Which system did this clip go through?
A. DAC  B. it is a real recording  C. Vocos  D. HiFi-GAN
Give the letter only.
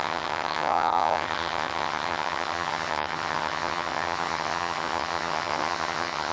D